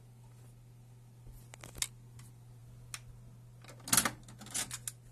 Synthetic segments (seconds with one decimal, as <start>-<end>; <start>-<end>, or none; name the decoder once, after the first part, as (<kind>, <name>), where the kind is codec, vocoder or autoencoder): none